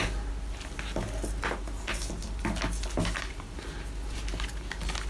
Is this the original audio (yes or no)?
yes